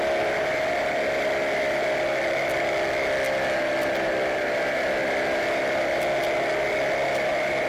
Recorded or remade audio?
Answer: recorded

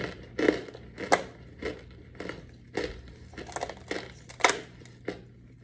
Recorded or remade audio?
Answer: recorded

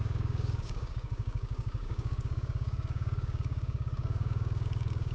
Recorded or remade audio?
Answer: remade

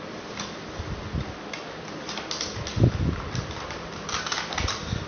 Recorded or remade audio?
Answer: recorded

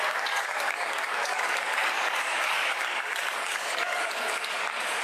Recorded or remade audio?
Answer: remade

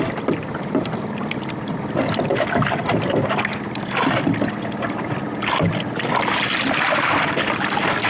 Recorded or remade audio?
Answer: recorded